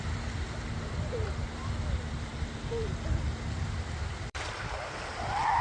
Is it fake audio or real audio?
fake